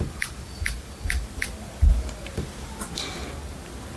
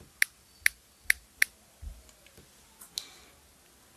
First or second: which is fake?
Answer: first